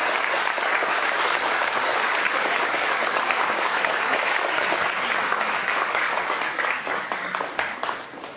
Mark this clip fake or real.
fake